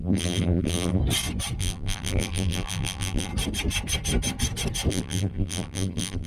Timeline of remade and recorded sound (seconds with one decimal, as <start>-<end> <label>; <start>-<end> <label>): 0.0-1.0 remade; 1.0-1.6 recorded; 1.6-3.3 remade; 3.3-4.9 recorded; 4.9-6.3 remade